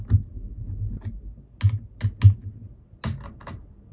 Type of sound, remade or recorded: recorded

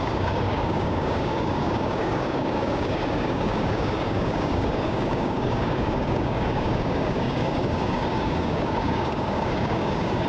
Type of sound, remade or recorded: remade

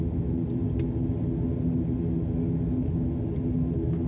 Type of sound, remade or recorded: recorded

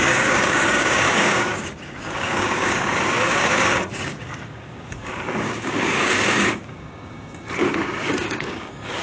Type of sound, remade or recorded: remade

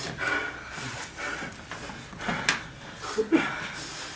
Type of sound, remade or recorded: recorded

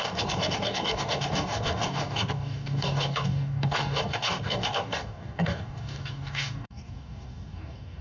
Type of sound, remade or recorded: remade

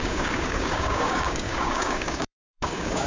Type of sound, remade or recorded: remade